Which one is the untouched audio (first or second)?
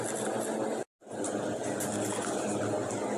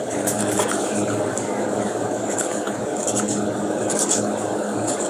first